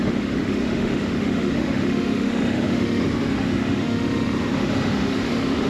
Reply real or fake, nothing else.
fake